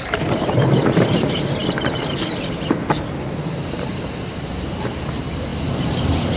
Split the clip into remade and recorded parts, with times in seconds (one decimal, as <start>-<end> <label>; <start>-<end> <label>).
0.0-6.4 remade